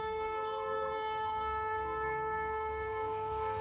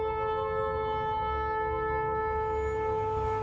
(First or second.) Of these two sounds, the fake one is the first